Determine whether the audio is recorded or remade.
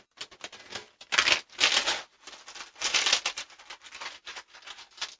recorded